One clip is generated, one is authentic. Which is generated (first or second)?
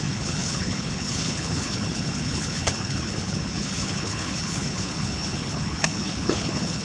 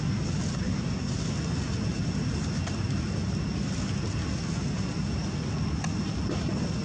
first